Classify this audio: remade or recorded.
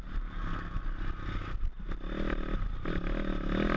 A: recorded